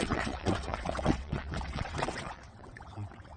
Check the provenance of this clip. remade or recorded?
remade